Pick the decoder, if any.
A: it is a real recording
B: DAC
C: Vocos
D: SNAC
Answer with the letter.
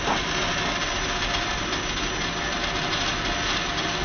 A